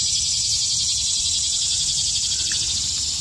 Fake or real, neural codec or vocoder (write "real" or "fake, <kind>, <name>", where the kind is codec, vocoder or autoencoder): real